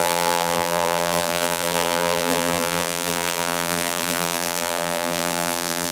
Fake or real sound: fake